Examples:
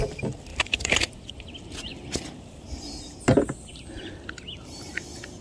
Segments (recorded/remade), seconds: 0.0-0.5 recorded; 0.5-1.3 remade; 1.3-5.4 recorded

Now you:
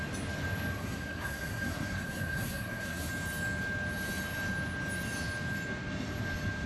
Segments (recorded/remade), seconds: 0.0-0.8 recorded; 0.8-3.1 remade; 3.1-6.7 recorded